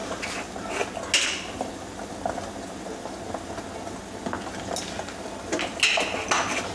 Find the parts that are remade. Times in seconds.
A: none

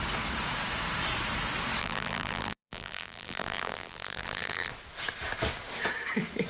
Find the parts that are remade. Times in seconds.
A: 1.8-4.7 (vocoder, BigVGAN v2)

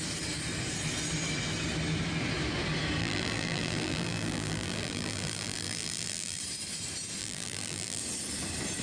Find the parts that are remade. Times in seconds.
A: 3.0-6.4 (vocoder, BigVGAN v2); 7.2-8.0